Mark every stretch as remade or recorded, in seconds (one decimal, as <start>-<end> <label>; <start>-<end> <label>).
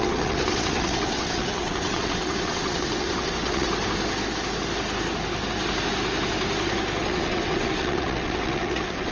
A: 0.0-3.7 remade; 3.7-7.0 recorded; 7.0-9.1 remade